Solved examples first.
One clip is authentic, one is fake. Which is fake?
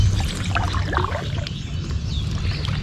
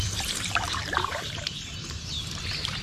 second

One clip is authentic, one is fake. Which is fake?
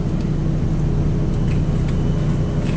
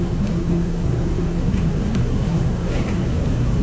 second